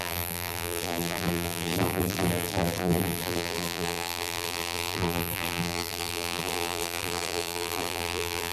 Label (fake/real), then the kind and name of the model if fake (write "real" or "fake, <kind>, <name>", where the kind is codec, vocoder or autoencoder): fake, vocoder, BigVGAN v2